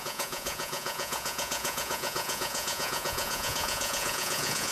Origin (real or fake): fake